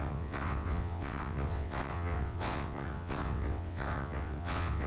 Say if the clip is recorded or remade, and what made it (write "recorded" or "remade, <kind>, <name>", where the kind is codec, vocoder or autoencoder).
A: remade, vocoder, WaveNeXt